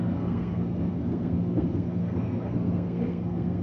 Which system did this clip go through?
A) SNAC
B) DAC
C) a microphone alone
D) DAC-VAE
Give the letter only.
A